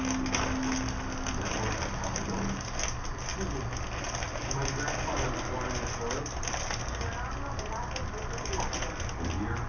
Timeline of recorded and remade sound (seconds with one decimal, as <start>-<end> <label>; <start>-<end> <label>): 0.0-9.7 recorded